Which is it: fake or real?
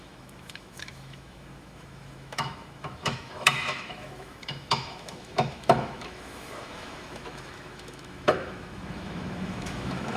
fake